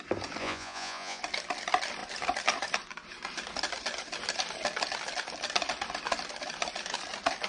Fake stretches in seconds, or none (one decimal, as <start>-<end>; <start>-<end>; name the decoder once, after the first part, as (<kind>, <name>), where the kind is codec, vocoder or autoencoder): 0.4-1.2 (vocoder, Vocos)